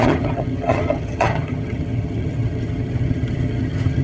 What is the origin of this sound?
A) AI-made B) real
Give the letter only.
A